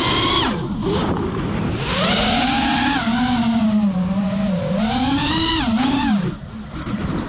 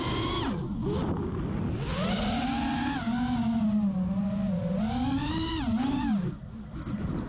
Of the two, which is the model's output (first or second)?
first